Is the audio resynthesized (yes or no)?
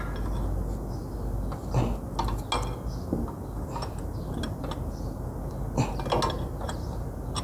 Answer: no